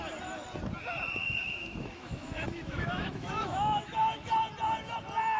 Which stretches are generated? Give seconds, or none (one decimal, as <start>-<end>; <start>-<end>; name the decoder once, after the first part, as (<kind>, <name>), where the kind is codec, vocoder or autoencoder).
1.2-4.3 (autoencoder, DAC-VAE)